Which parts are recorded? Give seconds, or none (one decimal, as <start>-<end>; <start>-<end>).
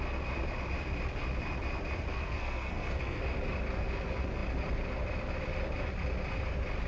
0.0-2.1; 3.2-6.9